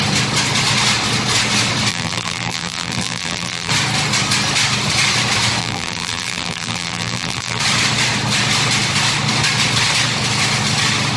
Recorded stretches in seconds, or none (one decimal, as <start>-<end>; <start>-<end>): 0.0-1.9; 3.7-5.6; 7.6-11.2